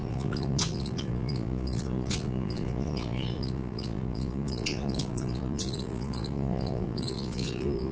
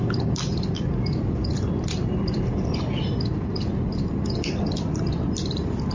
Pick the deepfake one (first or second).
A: first